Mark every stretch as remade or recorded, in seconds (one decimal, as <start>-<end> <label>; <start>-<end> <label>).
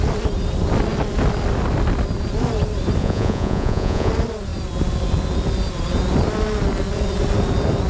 0.0-3.0 recorded; 3.0-4.1 remade; 4.1-7.9 recorded